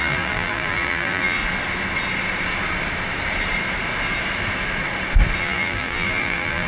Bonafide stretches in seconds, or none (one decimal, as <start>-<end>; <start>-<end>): 1.4-5.4